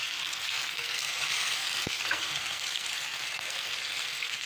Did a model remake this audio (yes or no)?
yes